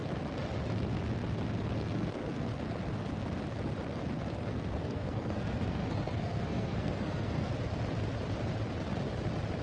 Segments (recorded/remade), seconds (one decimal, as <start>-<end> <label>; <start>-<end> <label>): 0.0-1.7 recorded; 1.7-2.5 remade; 2.5-4.3 recorded; 4.3-7.5 remade; 7.5-9.6 recorded